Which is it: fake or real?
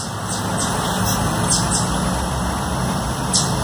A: real